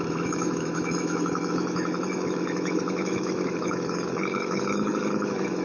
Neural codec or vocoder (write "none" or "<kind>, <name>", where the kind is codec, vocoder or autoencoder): autoencoder, DAC-VAE